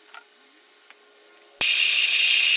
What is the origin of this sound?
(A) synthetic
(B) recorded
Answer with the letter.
B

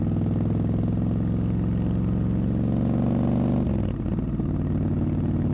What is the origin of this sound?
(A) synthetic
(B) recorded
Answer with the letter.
B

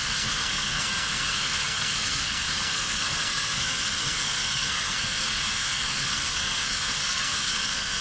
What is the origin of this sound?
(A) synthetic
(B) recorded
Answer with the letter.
A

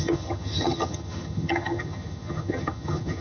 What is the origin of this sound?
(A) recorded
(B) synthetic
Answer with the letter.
B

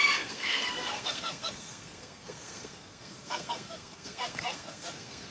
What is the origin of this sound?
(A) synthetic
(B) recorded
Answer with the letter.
A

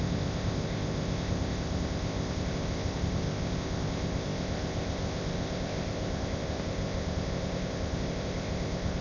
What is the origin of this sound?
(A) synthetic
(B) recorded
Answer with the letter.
A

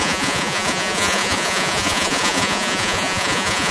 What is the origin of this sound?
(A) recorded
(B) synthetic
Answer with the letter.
B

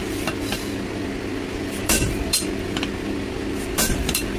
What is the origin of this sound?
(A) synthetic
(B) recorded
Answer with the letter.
A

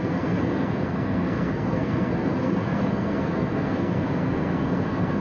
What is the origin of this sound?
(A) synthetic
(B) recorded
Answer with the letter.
A